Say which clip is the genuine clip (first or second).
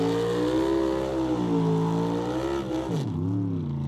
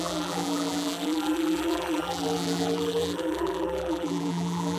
first